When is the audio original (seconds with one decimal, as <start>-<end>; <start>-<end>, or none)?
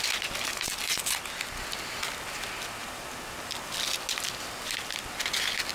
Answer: 0.0-5.7